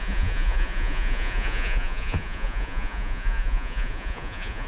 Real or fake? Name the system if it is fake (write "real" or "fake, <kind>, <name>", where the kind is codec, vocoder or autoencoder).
fake, vocoder, Vocos